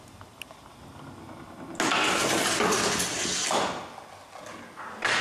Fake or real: real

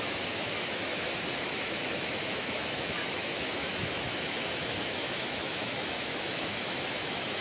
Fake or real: fake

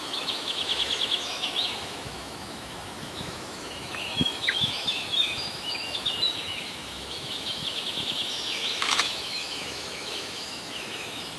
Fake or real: fake